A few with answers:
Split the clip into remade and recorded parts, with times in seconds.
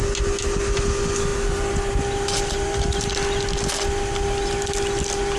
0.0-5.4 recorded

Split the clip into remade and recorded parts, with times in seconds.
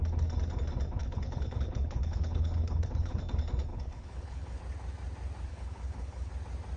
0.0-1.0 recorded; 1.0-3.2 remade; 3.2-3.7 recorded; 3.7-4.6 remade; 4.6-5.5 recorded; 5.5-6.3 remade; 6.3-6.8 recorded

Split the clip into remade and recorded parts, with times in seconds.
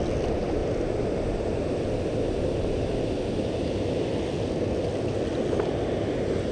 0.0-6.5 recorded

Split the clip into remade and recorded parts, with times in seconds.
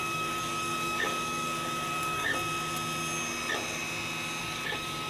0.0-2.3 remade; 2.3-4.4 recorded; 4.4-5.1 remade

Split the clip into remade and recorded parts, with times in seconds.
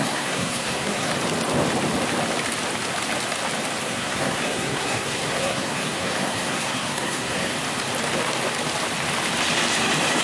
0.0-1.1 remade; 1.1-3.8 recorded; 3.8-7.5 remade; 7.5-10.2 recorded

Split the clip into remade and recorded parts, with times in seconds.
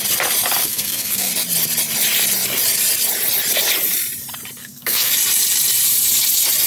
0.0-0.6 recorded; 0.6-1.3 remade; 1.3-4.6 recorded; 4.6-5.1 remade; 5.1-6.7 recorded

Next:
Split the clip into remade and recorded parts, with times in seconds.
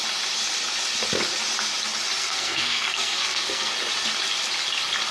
0.0-2.2 recorded; 2.2-3.7 remade; 3.7-5.1 recorded